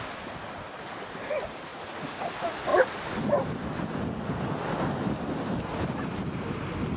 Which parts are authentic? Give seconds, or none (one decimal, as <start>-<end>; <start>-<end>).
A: 1.7-2.3; 2.7-7.0